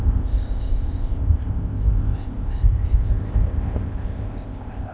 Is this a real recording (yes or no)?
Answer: no